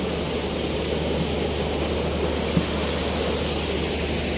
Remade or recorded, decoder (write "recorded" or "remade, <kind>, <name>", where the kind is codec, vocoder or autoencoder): recorded